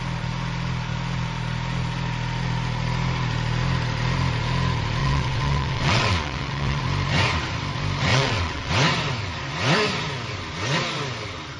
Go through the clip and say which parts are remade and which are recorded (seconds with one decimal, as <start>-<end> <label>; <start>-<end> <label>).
0.0-5.0 recorded; 5.0-6.8 remade; 6.8-8.1 recorded; 8.1-8.7 remade; 8.7-11.6 recorded